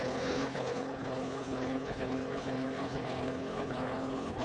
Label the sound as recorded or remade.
remade